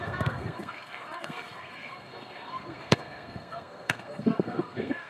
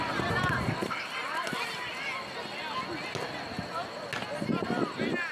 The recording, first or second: second